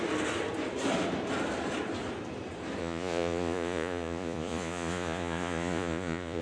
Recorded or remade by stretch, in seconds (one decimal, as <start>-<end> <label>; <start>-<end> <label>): 0.0-2.8 recorded; 2.8-6.4 remade